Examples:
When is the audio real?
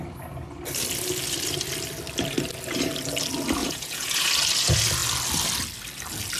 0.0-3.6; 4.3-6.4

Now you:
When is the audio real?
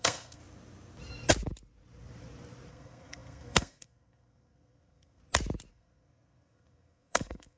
0.4-2.7; 5.2-5.7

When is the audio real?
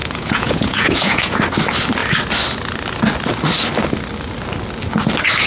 1.4-5.5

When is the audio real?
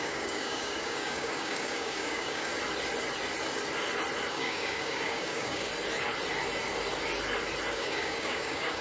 2.5-4.3; 5.7-7.7